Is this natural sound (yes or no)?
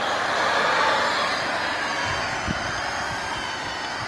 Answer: yes